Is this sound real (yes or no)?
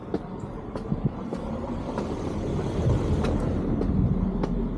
yes